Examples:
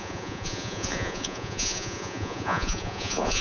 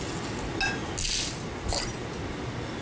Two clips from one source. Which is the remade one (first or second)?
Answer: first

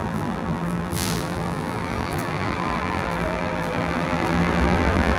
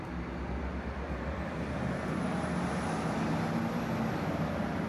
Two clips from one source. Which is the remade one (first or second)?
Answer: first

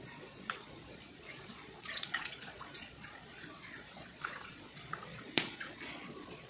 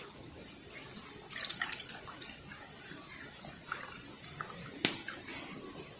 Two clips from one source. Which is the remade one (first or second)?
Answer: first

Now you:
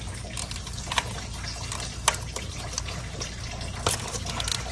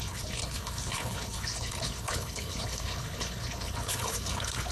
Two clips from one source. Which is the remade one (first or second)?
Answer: second